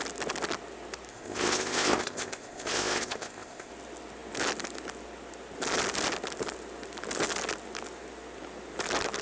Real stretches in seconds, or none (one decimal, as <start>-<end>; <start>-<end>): 0.0-1.1; 3.7-9.2